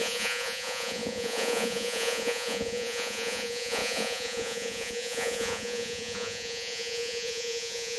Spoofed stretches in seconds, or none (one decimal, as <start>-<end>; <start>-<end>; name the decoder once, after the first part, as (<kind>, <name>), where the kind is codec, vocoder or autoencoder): 0.0-8.0 (vocoder, Vocos)